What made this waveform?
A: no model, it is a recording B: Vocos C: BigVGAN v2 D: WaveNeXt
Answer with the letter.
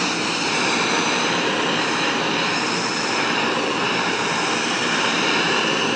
C